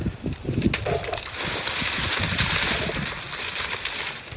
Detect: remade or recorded recorded